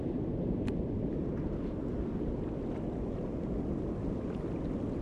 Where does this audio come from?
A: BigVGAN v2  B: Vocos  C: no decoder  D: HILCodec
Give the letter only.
C